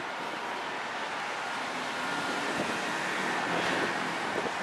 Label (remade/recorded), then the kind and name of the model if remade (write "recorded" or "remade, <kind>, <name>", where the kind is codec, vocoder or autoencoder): recorded